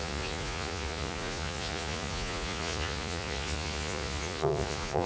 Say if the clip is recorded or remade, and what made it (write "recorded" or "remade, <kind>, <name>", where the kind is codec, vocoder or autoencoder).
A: remade, vocoder, Vocos